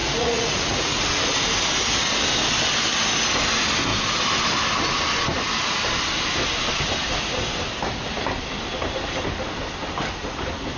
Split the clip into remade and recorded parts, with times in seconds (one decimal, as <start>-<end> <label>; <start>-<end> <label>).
0.0-1.0 remade; 1.0-10.8 recorded